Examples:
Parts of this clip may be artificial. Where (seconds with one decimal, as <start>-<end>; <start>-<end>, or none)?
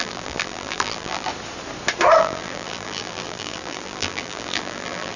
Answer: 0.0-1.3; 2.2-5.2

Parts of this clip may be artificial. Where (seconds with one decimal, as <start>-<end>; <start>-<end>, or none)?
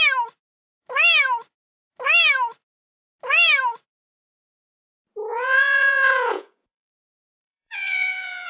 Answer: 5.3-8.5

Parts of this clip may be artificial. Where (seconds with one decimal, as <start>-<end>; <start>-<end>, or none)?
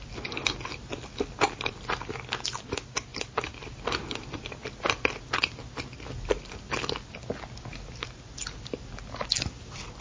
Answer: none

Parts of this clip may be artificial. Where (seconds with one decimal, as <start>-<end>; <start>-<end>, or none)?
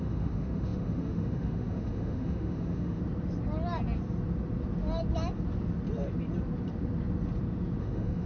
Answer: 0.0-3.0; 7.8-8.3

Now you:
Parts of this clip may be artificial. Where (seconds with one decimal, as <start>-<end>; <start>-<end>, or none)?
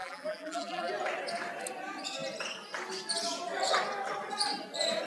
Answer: 0.0-0.9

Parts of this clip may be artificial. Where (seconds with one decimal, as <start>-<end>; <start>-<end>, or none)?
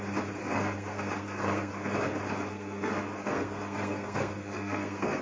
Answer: 0.4-1.7; 2.5-5.2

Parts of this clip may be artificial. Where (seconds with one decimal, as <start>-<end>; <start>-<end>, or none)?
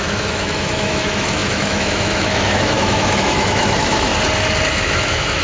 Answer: 0.0-4.1; 4.7-5.4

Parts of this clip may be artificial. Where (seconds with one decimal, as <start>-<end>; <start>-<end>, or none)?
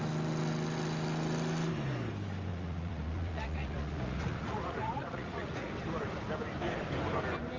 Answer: 2.5-5.7